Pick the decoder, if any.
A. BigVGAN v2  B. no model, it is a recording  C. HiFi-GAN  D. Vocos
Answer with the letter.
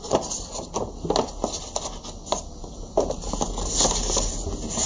B